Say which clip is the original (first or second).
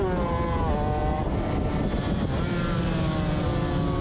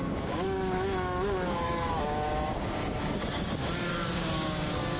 first